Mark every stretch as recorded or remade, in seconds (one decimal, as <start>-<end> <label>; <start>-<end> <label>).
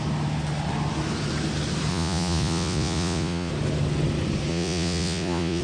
0.0-1.9 recorded; 1.9-3.5 remade; 3.5-4.5 recorded; 4.5-5.6 remade